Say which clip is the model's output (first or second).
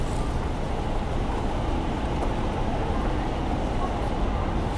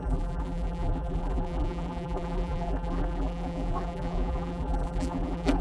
second